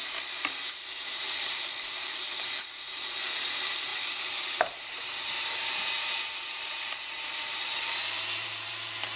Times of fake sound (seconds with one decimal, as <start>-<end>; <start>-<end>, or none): 0.7-9.2

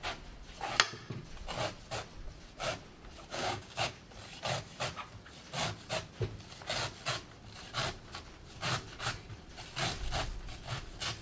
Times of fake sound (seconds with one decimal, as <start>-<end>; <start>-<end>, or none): 3.3-4.0

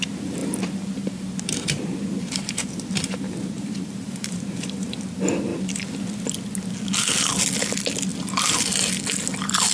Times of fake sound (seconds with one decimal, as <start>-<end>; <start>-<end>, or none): 0.4-5.1

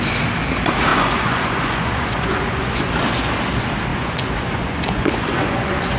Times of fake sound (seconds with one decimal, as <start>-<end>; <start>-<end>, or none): 0.9-2.9; 3.9-6.0

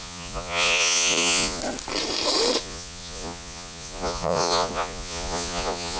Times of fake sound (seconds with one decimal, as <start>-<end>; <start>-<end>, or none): 0.0-1.6; 2.6-6.0

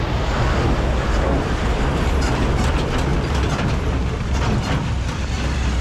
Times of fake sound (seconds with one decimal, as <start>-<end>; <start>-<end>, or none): 0.0-5.8

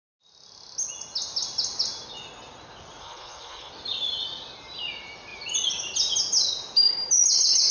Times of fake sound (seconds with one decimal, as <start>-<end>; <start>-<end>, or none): 3.0-3.7